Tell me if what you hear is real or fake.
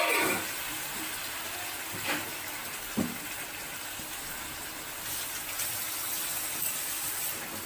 real